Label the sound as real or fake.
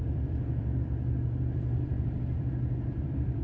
fake